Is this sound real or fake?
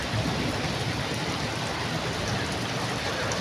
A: real